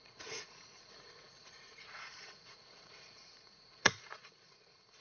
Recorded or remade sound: remade